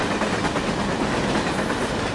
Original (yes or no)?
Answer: yes